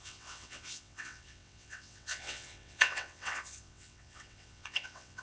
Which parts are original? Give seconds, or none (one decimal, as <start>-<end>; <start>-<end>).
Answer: none